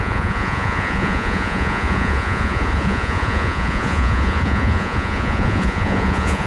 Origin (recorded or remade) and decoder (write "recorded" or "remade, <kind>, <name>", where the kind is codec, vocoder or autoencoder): remade, vocoder, Vocos